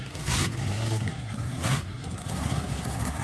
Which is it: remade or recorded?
remade